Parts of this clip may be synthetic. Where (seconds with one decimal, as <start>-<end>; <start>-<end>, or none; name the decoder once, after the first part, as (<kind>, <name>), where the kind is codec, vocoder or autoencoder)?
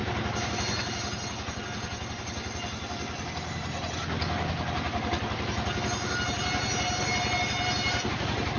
none